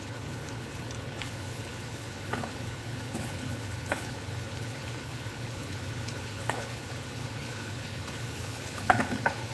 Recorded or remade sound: remade